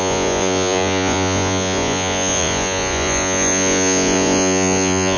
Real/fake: fake